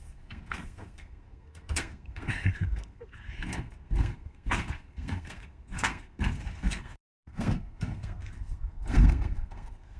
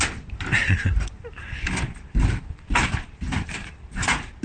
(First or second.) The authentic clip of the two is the second